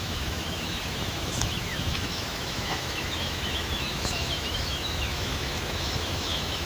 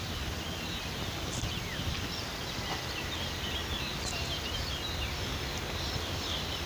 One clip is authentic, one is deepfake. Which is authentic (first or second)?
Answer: second